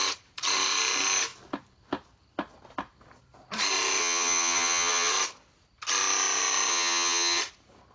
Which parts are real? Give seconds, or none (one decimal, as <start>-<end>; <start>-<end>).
0.0-4.0; 5.1-6.7; 7.4-7.9